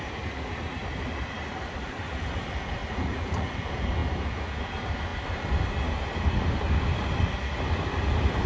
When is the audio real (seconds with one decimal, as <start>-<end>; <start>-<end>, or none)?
0.0-2.8; 3.5-8.5